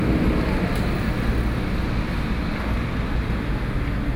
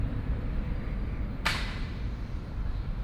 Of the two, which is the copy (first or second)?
second